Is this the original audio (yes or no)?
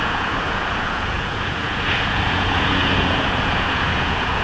no